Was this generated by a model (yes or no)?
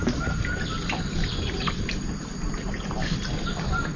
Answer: no